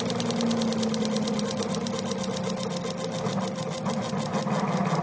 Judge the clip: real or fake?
real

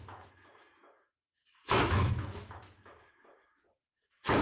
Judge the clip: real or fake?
fake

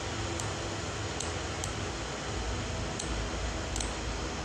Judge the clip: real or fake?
real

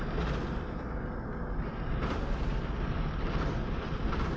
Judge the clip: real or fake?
real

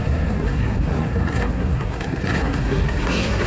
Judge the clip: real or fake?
fake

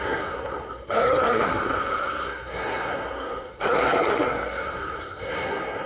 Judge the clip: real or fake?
fake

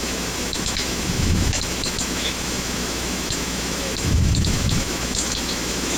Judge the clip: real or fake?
fake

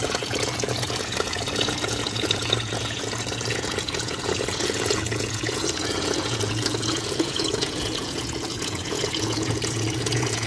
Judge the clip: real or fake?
fake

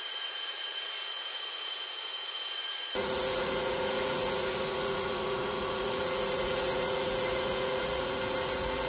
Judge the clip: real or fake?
fake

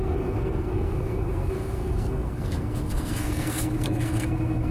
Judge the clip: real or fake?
fake